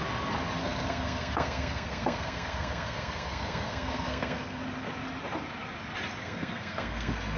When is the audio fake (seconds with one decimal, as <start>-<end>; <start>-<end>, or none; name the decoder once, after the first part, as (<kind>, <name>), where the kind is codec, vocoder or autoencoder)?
0.6-4.6 (codec, SNAC); 6.2-7.4